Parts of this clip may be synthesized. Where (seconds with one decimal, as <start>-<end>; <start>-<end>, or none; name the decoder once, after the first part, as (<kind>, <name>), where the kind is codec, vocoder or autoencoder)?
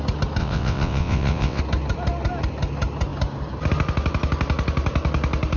0.4-1.6 (vocoder, WaveNeXt)